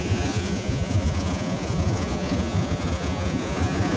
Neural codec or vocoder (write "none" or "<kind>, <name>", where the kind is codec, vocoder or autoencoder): vocoder, Vocos